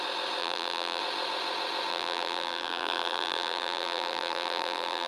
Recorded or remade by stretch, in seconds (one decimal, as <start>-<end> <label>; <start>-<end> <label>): 0.0-0.4 recorded; 0.4-1.0 remade; 1.0-1.9 recorded; 1.9-5.1 remade